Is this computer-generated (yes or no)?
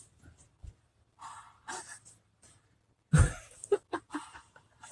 no